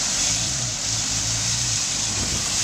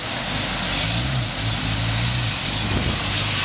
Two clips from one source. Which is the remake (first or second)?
first